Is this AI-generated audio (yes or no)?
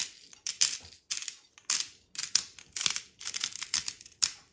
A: no